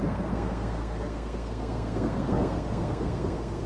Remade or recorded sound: remade